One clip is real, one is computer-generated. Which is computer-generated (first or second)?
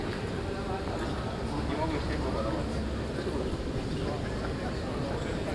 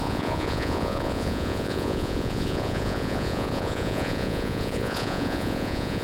second